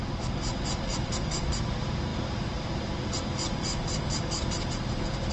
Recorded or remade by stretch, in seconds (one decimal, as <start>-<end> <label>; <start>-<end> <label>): 0.0-0.9 recorded; 0.9-1.7 remade; 1.7-2.1 recorded; 2.1-5.3 remade